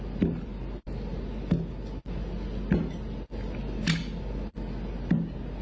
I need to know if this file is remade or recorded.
recorded